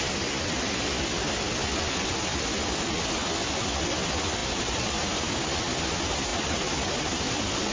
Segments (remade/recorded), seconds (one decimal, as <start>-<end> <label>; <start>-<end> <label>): 0.0-4.4 recorded; 4.4-5.2 remade; 5.2-6.3 recorded; 6.3-7.3 remade; 7.3-7.7 recorded